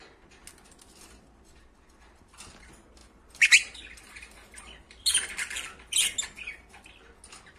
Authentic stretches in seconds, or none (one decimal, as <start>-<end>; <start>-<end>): 0.0-3.0; 5.5-7.6